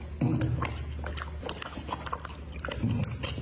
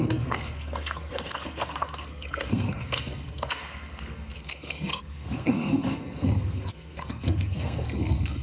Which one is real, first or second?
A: first